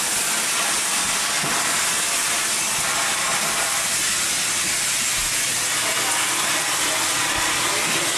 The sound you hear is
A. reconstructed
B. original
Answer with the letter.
B